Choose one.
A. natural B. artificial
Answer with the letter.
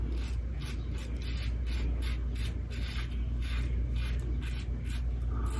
A